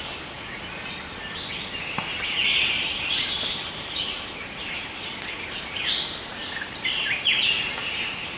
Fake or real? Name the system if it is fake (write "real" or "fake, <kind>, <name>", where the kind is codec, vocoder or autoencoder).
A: real